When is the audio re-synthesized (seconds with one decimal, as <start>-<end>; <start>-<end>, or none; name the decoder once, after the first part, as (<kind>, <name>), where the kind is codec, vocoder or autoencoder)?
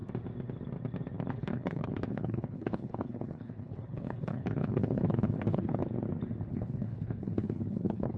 1.3-5.8 (codec, HILCodec); 6.5-8.2